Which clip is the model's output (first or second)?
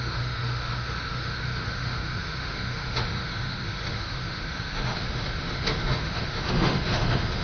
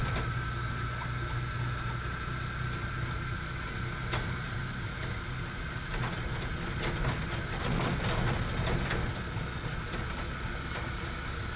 first